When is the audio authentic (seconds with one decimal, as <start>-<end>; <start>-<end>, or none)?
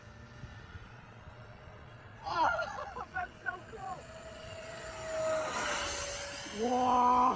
0.0-0.5; 4.9-7.4